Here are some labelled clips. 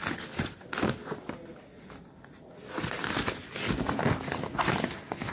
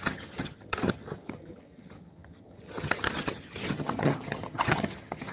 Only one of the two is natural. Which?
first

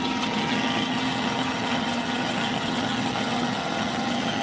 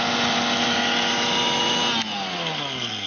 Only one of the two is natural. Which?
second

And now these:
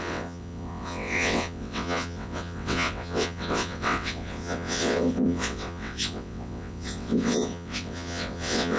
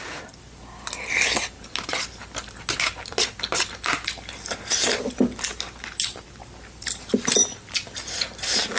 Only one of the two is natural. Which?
second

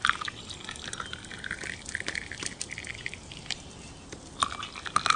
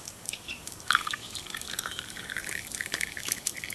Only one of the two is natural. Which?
first